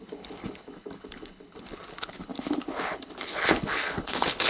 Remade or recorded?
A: remade